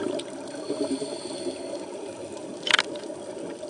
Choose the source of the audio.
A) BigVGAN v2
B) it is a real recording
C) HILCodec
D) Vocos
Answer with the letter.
A